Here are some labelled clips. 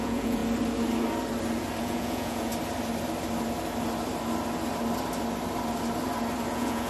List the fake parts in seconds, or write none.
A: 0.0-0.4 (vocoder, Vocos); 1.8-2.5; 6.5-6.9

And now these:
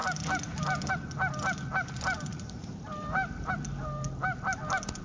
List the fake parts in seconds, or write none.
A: 2.3-3.5 (vocoder, BigVGAN v2)

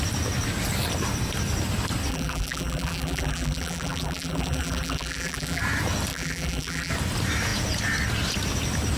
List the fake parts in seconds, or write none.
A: 2.1-5.6 (vocoder, BigVGAN v2); 6.1-6.9